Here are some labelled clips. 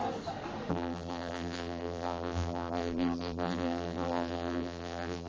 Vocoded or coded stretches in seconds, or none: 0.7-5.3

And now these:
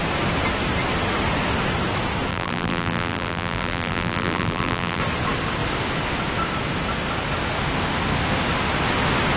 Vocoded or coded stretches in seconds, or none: 2.3-5.0

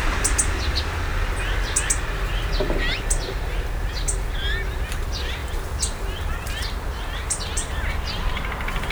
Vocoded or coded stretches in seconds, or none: 5.4-7.4

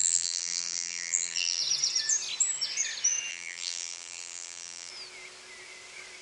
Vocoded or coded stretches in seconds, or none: 0.0-1.6; 3.3-4.9